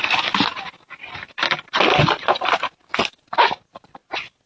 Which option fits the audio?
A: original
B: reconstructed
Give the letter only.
A